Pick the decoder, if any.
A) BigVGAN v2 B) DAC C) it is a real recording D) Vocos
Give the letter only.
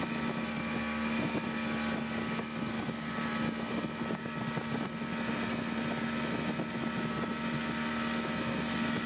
C